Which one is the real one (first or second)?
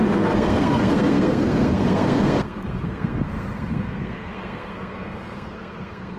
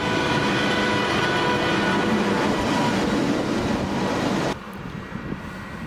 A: second